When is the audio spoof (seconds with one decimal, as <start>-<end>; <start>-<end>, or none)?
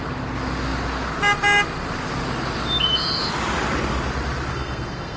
4.5-5.2